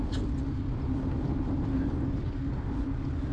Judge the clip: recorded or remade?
recorded